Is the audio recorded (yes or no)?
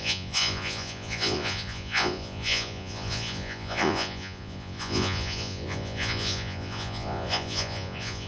no